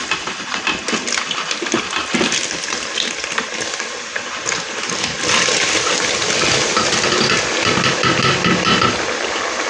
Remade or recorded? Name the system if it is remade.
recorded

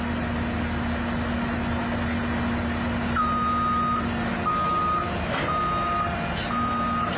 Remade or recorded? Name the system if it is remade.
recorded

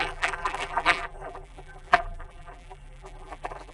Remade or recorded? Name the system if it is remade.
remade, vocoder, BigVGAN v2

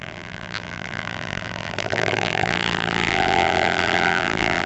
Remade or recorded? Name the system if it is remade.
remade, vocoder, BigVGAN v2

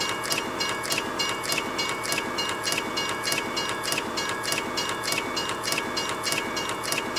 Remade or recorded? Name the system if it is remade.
remade, vocoder, BigVGAN v2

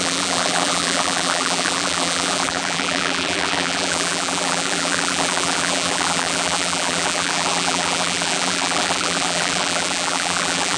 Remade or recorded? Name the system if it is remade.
remade, vocoder, BigVGAN v2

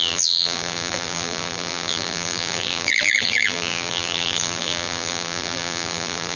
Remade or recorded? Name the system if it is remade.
remade, vocoder, BigVGAN v2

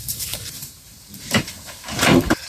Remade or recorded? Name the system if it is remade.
remade, vocoder, BigVGAN v2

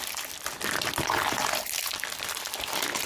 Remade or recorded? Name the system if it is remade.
remade, vocoder, BigVGAN v2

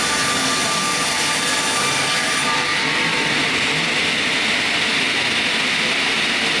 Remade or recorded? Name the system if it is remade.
recorded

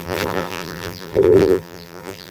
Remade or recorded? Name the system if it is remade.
remade, vocoder, BigVGAN v2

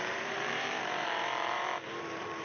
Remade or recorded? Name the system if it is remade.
remade, vocoder, BigVGAN v2